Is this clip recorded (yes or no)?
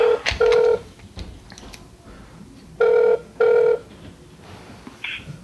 yes